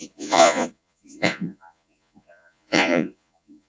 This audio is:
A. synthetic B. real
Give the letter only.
A